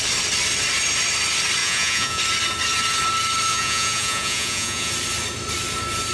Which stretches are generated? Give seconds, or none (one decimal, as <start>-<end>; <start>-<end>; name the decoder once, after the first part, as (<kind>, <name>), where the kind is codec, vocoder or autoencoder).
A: 1.6-2.2 (vocoder, Vocos); 3.5-4.9